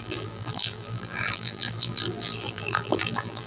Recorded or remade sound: remade